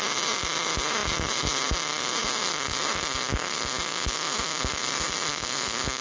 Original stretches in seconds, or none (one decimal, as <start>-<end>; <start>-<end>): 0.0-3.9; 4.7-5.3